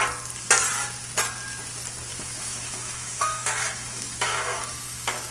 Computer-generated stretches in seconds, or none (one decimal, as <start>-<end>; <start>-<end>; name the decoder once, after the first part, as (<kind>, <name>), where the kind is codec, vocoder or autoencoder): 2.1-5.3 (autoencoder, DAC-VAE)